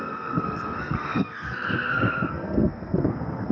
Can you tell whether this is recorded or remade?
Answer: remade